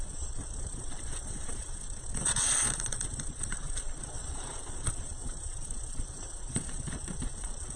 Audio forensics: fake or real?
fake